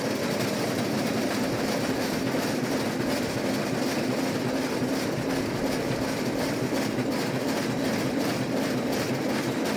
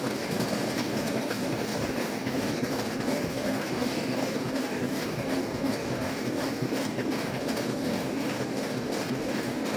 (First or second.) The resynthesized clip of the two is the second